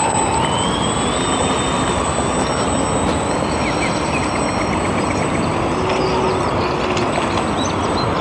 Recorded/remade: recorded